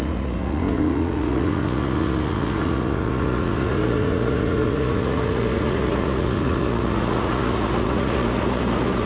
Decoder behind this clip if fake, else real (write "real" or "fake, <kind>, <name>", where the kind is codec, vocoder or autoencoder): fake, vocoder, Vocos